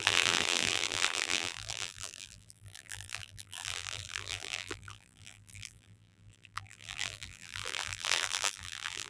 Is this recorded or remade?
remade